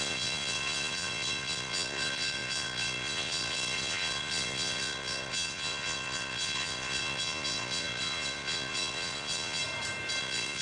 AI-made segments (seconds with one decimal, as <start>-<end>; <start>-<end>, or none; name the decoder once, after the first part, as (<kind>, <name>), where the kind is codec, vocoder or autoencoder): 0.0-9.6 (vocoder, Vocos); 10.2-10.6

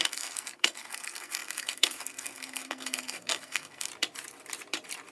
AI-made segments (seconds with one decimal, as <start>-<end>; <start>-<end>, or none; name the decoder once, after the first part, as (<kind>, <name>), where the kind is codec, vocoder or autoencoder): 0.0-3.9 (codec, SNAC)